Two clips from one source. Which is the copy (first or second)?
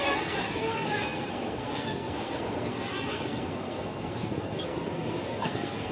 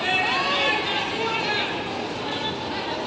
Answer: first